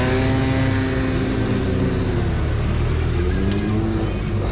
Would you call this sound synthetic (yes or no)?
no